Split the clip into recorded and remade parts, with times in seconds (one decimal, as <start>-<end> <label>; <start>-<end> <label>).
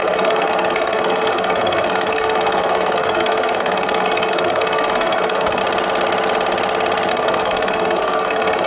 0.0-5.6 remade; 5.6-7.1 recorded; 7.1-8.7 remade